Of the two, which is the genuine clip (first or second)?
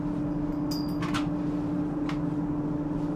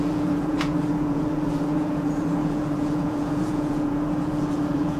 first